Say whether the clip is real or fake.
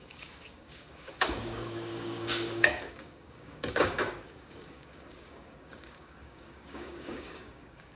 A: fake